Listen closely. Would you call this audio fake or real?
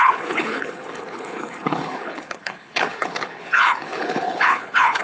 fake